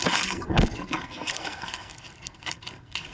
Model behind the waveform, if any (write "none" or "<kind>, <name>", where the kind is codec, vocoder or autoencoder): codec, SNAC